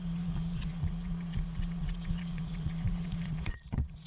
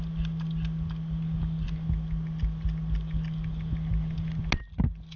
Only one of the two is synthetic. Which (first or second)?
first